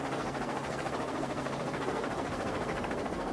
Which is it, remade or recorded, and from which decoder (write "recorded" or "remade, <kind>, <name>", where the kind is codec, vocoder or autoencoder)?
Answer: remade, codec, SNAC